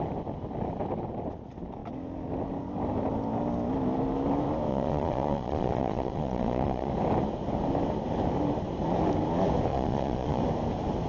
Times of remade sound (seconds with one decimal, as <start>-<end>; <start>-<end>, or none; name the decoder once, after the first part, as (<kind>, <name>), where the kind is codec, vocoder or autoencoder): 4.7-6.9 (vocoder, Vocos); 9.7-10.4